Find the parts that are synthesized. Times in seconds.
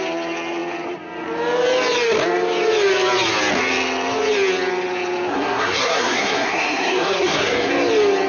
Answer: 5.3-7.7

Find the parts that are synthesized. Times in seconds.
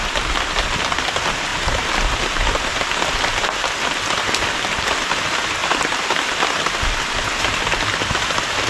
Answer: 1.5-3.2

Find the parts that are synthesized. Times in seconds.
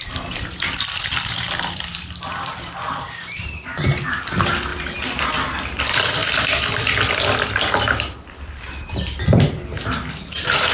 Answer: 0.0-4.7; 5.3-6.2; 7.0-10.7